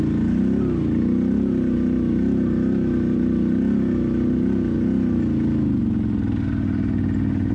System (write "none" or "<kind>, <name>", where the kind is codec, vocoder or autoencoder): none